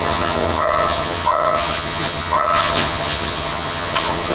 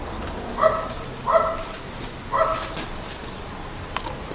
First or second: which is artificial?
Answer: first